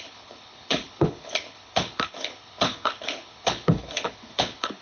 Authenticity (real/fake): fake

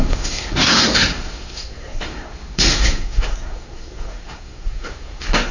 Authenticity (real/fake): fake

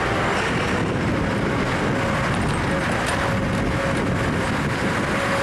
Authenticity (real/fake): real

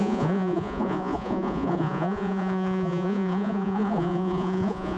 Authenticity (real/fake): fake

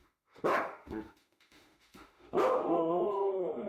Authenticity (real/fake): fake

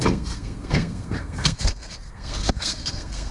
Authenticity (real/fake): fake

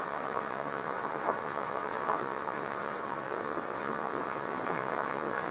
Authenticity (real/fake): fake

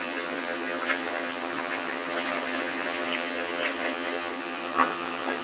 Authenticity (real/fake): fake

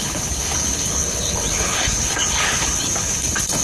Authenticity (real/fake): fake